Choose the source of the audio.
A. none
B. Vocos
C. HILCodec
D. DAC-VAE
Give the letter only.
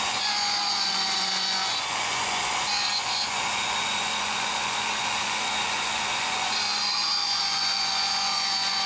B